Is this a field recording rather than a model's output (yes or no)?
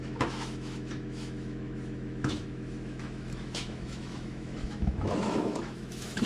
no